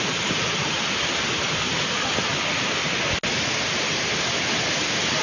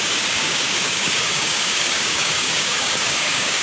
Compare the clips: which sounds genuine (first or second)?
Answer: first